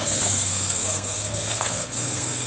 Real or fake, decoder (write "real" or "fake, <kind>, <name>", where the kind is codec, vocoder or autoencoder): fake, codec, SNAC